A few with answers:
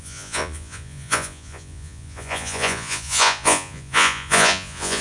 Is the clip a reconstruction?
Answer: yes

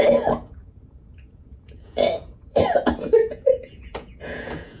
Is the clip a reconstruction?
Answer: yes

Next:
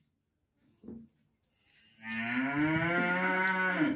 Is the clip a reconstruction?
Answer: no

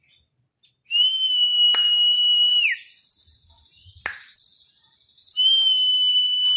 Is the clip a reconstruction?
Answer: no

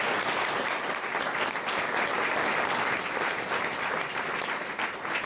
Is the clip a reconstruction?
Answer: no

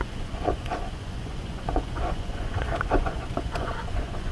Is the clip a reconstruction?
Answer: yes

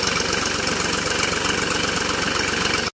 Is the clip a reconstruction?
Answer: no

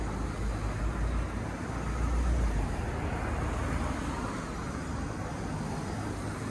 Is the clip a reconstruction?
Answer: no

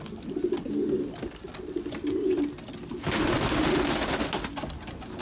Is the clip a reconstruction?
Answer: no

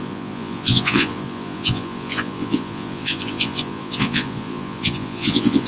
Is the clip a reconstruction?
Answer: yes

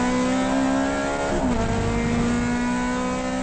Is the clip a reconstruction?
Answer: no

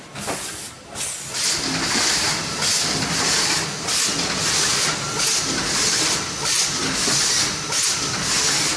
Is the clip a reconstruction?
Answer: no